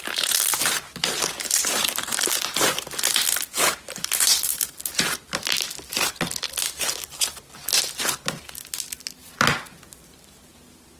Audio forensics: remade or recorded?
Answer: recorded